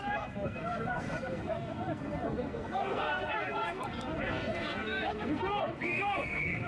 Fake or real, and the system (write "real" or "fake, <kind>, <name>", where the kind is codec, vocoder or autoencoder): fake, codec, SNAC